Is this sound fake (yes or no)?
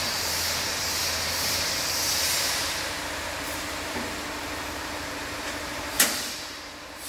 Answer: yes